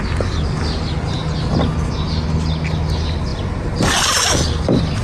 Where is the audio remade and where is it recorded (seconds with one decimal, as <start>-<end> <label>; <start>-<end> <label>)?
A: 0.0-5.0 recorded